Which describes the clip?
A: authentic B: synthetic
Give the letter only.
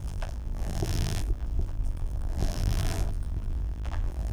B